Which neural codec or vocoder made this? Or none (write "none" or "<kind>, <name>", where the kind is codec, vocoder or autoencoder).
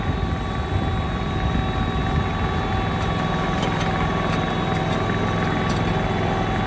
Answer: none